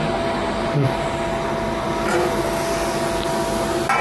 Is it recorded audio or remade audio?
recorded